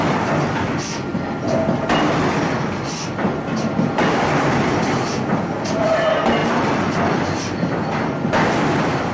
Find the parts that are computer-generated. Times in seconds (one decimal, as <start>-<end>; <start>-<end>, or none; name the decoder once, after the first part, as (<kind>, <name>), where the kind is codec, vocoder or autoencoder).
none